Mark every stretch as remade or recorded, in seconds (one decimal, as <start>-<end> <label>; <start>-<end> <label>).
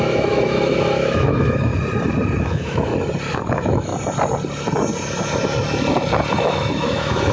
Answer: 0.0-1.7 remade; 1.7-2.4 recorded; 2.4-2.9 remade; 2.9-3.5 recorded; 3.5-3.9 remade; 3.9-6.4 recorded; 6.4-7.3 remade